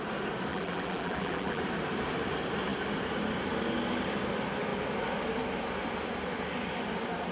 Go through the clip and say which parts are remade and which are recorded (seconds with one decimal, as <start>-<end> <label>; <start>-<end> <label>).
0.0-0.5 recorded; 0.5-1.6 remade; 1.6-7.3 recorded